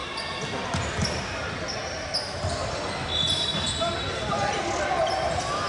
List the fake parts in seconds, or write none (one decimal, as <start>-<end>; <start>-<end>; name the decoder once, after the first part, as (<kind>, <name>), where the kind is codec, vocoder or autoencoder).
none